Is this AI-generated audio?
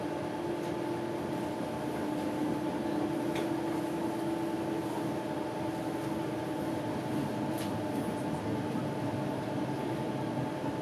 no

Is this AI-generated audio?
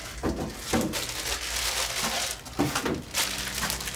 no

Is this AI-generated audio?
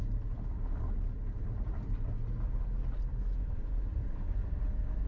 no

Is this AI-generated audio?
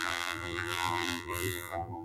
yes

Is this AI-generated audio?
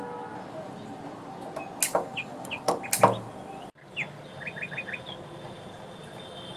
no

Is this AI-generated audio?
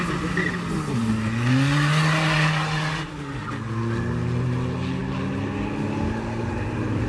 no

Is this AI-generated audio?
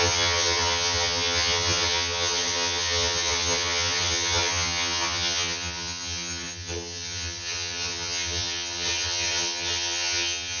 yes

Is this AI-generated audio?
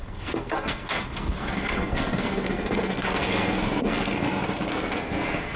yes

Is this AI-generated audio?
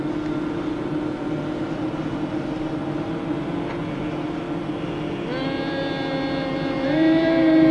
no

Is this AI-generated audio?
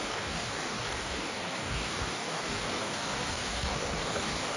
yes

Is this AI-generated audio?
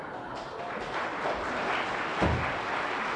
no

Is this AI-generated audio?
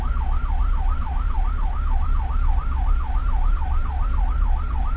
yes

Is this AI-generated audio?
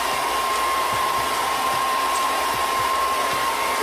yes